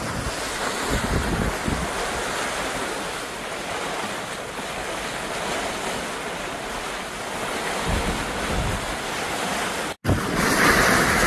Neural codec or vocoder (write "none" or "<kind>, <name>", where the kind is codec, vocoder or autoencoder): none